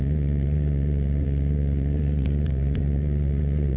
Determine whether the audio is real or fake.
fake